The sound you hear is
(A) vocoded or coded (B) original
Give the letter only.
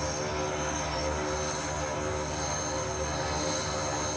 B